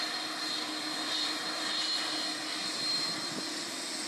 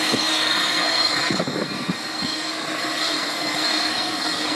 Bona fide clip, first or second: first